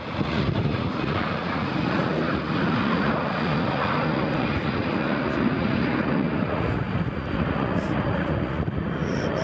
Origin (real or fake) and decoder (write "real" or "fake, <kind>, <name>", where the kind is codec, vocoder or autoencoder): fake, vocoder, Vocos